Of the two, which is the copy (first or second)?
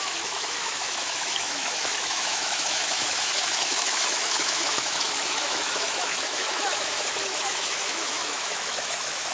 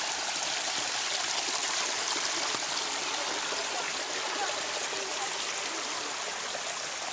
first